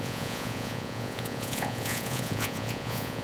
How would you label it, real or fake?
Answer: fake